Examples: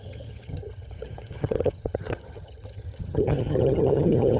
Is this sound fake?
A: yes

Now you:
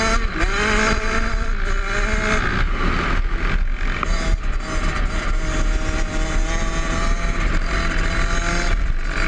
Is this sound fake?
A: no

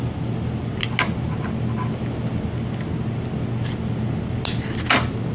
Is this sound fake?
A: no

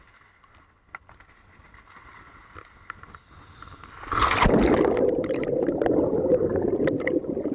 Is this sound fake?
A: no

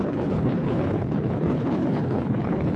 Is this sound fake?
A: yes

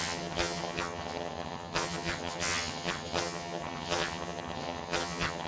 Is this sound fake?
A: yes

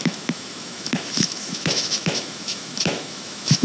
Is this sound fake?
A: yes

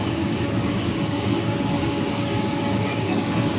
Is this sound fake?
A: yes